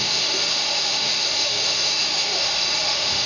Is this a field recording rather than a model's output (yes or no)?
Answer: no